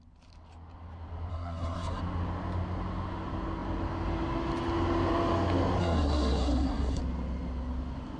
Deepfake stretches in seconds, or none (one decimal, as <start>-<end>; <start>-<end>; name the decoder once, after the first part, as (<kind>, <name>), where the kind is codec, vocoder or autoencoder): 1.3-2.0 (codec, SNAC); 5.8-7.0